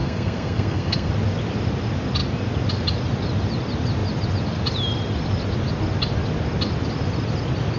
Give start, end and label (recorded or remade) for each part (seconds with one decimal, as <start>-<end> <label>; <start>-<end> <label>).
0.0-1.1 remade; 1.1-7.8 recorded